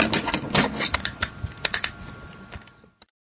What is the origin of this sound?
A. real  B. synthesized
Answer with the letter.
A